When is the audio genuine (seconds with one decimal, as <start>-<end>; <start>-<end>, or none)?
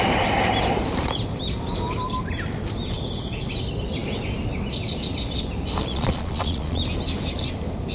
0.0-5.8; 6.8-7.9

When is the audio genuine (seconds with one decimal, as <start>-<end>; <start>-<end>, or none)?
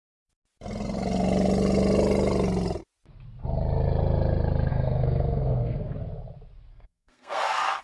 0.0-4.7; 5.9-6.7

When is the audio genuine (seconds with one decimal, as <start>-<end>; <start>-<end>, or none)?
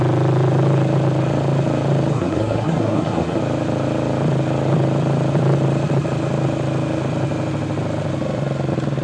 0.0-2.1; 3.4-9.0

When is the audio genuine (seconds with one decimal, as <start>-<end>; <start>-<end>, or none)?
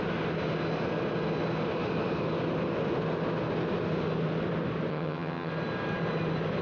0.0-4.9; 5.5-6.6